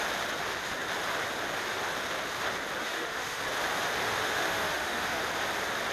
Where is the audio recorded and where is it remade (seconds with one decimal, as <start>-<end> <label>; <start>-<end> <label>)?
0.0-2.8 recorded; 2.8-3.4 remade; 3.4-4.2 recorded; 4.2-5.2 remade; 5.2-5.9 recorded